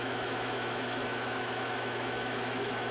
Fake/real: fake